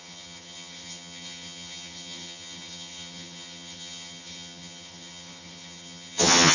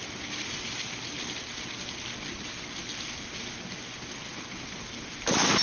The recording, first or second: second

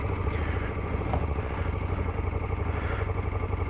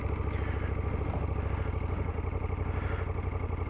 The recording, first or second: second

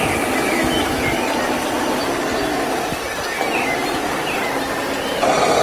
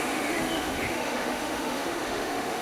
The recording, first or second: first